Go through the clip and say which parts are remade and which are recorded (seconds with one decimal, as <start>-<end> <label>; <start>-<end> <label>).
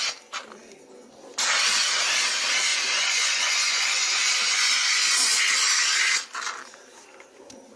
0.0-2.7 recorded; 2.7-5.4 remade; 5.4-7.8 recorded